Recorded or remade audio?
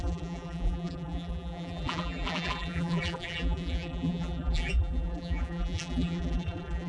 remade